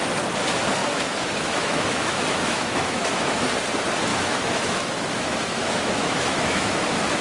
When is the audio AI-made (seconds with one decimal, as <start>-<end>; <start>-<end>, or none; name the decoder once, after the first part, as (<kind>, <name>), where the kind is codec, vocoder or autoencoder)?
0.8-3.4 (autoencoder, DAC-VAE); 4.1-6.8